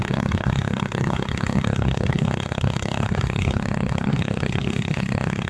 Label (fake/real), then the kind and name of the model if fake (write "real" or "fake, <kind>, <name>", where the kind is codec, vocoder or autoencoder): fake, codec, SNAC